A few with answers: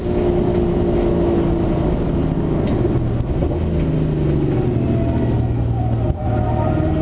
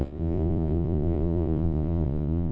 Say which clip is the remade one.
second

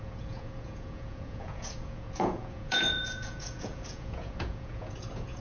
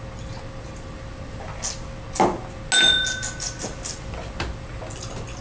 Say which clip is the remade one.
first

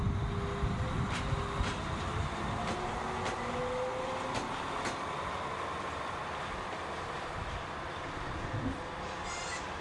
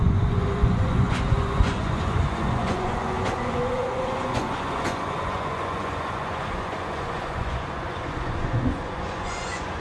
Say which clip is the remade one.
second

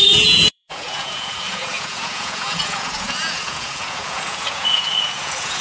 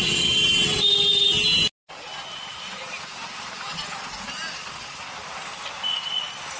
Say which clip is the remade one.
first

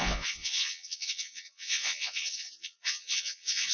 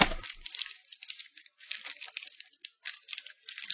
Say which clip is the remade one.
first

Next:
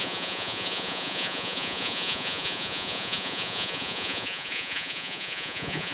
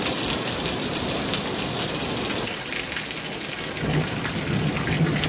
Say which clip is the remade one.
first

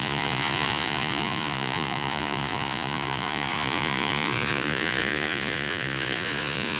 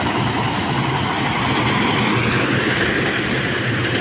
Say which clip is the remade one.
first